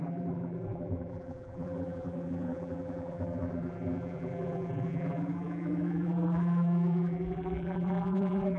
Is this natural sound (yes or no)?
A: no